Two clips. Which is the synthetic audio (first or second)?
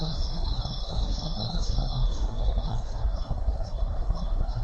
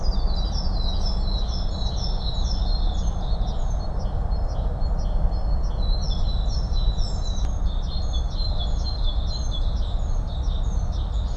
first